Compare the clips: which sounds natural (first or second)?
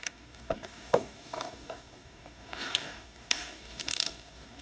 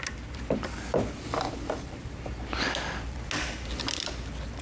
second